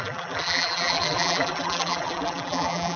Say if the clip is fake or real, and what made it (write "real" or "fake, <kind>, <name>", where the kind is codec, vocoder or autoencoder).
fake, vocoder, BigVGAN v2